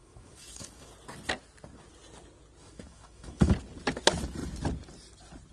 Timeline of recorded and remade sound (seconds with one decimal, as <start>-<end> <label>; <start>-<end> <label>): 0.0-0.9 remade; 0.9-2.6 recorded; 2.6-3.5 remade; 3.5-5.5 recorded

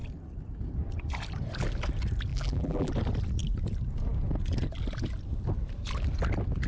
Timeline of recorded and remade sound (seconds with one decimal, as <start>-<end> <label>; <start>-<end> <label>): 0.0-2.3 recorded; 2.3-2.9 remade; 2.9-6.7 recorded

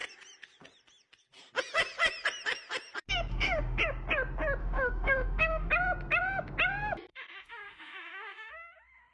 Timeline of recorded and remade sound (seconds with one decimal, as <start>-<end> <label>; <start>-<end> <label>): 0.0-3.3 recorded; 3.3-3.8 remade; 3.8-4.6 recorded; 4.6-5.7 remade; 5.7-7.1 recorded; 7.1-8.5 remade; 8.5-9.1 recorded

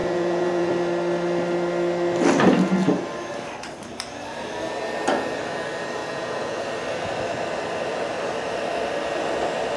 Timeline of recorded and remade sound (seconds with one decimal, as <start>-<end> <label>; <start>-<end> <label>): 0.0-0.7 remade; 0.7-6.0 recorded; 6.0-6.6 remade; 6.6-9.8 recorded

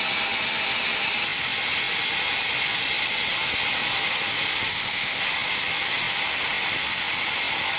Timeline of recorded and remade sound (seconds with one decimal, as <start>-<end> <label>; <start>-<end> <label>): 0.0-4.7 recorded; 4.7-5.2 remade; 5.2-7.8 recorded

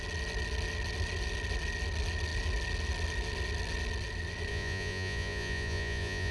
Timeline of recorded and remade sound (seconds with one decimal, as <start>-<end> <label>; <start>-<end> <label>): 0.0-4.5 recorded; 4.5-6.3 remade